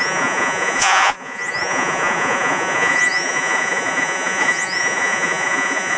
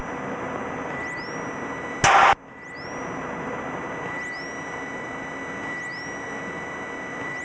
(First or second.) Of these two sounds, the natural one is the second